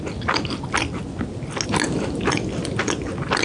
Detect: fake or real real